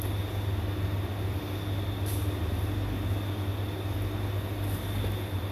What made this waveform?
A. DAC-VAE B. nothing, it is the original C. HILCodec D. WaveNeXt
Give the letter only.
B